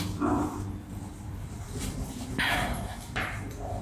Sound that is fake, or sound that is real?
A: fake